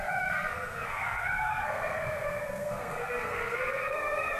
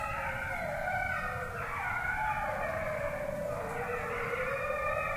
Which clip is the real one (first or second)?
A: second